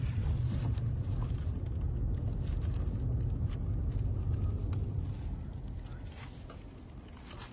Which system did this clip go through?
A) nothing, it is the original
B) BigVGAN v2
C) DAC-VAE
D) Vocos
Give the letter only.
A